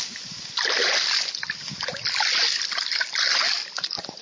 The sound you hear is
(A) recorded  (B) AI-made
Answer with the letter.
A